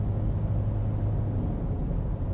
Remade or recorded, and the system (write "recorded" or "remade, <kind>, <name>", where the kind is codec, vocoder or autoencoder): recorded